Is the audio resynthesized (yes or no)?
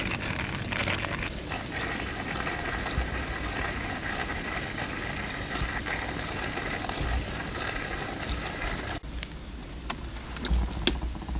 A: no